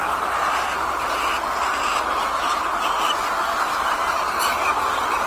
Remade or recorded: recorded